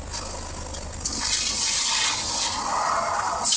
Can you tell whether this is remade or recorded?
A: recorded